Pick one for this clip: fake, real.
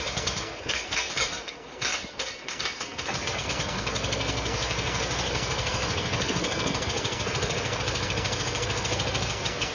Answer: fake